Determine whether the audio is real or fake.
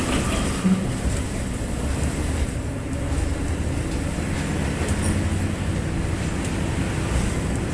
real